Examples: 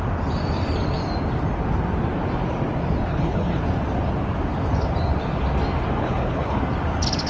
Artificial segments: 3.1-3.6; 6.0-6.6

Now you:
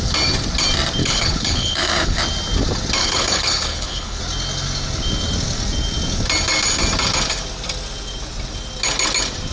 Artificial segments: 1.0-2.2; 3.0-4.2

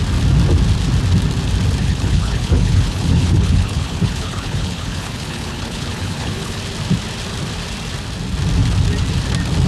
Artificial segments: 1.8-6.6